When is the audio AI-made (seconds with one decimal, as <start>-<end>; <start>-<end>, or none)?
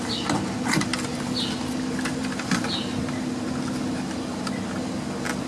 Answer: none